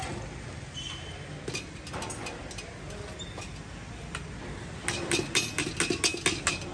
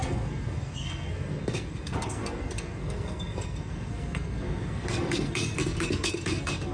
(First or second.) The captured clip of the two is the first